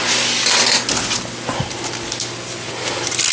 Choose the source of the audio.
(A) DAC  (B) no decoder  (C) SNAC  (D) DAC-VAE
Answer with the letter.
B